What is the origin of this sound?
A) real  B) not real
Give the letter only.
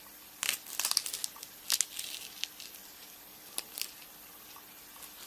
A